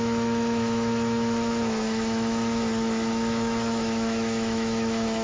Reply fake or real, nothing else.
fake